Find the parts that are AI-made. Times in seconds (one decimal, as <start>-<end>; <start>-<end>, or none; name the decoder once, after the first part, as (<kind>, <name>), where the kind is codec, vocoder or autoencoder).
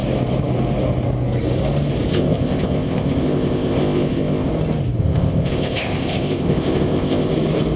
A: 2.1-4.5 (codec, ZipCodec); 5.0-7.3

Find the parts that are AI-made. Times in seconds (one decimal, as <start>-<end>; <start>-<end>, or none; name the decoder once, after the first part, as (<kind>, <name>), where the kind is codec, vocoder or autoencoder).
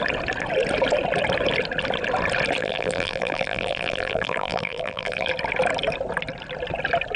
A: 2.6-5.3 (vocoder, BigVGAN v2)